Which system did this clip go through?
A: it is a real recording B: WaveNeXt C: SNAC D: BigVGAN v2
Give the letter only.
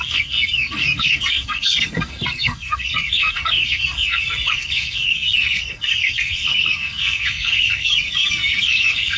C